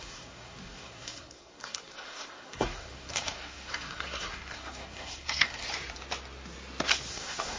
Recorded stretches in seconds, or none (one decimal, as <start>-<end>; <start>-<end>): 5.6-7.1